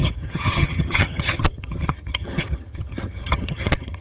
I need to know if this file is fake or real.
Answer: fake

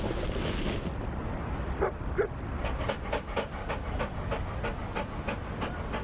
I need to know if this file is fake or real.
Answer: real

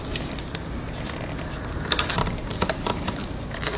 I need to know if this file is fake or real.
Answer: real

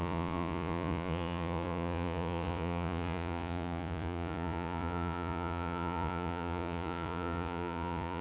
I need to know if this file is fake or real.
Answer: fake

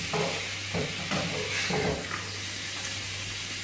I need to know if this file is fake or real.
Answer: real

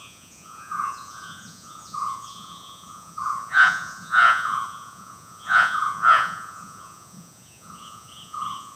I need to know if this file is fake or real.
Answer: fake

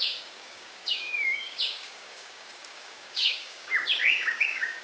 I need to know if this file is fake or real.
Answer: fake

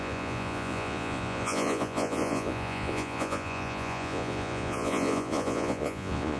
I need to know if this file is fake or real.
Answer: fake